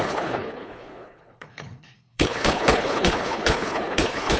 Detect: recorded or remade remade